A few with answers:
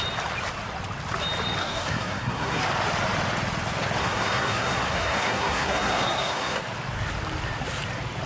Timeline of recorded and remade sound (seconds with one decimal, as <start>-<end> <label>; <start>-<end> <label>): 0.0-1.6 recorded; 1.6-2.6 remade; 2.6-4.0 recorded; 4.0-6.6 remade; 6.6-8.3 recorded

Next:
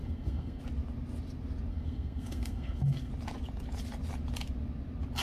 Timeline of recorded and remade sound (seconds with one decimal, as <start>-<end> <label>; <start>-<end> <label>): 0.0-0.6 remade; 0.6-1.7 recorded; 1.7-3.1 remade; 3.1-5.2 recorded

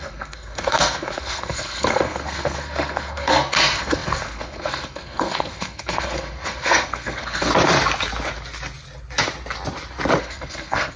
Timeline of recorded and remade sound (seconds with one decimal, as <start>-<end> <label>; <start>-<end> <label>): 0.0-7.5 remade; 7.5-10.2 recorded; 10.2-11.0 remade